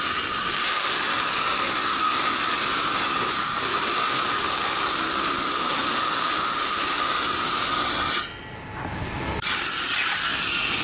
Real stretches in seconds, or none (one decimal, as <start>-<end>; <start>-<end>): 0.0-10.8